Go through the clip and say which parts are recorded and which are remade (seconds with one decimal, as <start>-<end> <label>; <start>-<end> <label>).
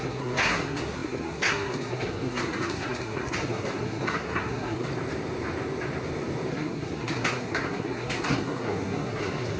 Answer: 0.0-4.9 remade; 4.9-6.5 recorded; 6.5-9.6 remade